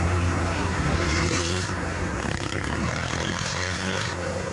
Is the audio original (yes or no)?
no